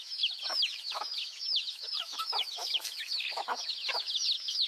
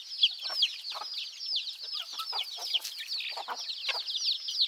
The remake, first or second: first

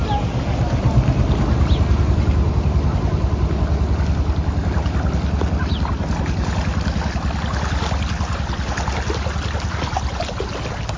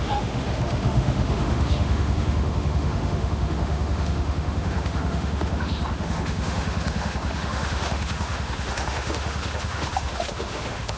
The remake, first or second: second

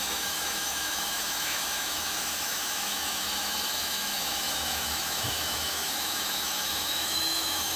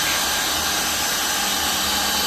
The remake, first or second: first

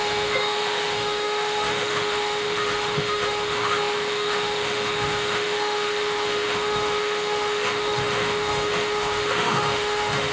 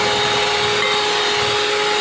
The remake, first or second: first